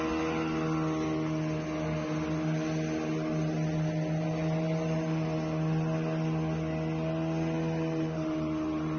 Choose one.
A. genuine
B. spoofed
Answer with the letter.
A